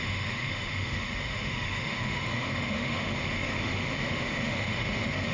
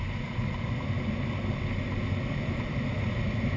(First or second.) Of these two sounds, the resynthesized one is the first